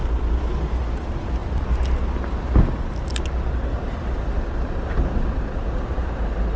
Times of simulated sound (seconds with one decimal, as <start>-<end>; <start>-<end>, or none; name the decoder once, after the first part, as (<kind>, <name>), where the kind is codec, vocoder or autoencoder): none